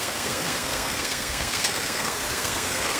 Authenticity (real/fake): fake